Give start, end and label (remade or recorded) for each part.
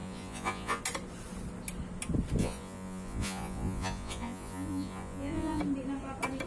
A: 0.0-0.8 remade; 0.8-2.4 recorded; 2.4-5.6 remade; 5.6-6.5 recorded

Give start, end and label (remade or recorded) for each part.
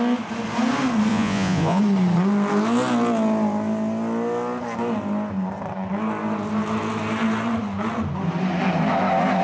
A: 0.0-1.1 recorded; 1.1-1.8 remade; 1.8-9.4 recorded